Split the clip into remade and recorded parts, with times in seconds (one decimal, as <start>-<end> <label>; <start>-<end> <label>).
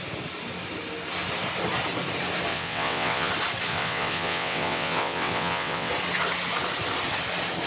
0.0-2.5 recorded; 2.5-3.3 remade; 3.3-3.7 recorded; 3.7-5.9 remade; 5.9-7.7 recorded